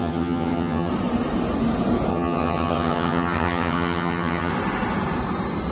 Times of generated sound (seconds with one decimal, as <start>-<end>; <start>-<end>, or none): 0.0-0.9; 2.1-4.5